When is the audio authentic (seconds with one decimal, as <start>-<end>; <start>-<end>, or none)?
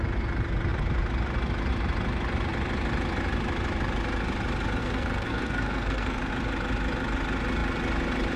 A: 0.0-4.8; 6.3-8.4